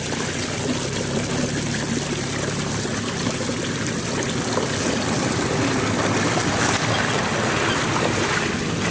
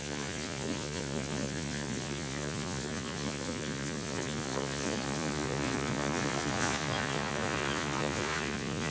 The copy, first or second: second